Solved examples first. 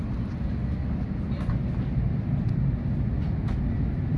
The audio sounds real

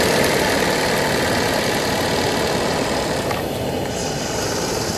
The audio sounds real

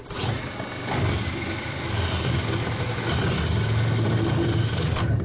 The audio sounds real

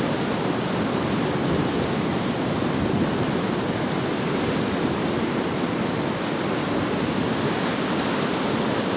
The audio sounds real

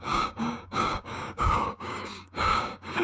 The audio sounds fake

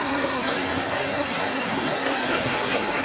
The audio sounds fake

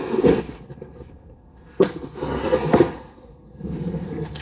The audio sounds fake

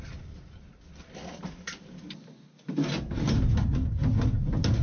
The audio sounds real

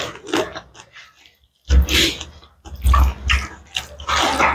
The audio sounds real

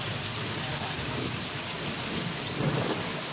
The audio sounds real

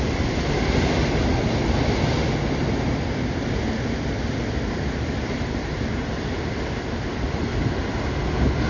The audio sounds real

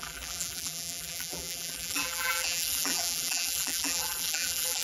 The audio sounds fake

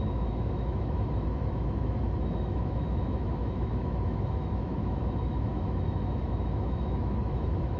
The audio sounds fake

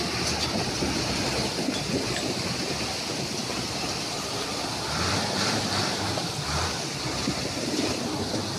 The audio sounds fake